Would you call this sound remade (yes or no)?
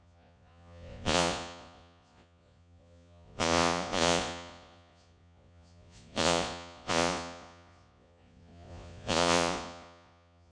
yes